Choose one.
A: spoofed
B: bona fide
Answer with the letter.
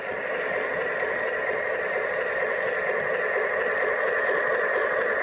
B